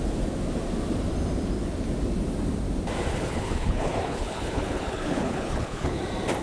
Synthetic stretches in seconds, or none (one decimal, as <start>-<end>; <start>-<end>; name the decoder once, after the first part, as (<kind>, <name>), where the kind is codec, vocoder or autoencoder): 3.1-6.0 (codec, HILCodec)